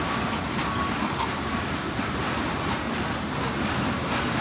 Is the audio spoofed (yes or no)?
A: no